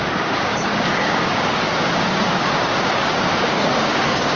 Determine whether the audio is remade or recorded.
remade